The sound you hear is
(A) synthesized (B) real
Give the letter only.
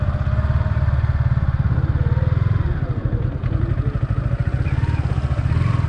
B